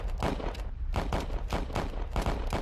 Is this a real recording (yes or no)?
yes